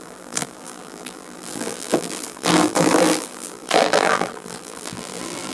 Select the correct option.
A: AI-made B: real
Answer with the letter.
A